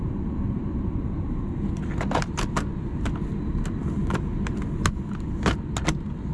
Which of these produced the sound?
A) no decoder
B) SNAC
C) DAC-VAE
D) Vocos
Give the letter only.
A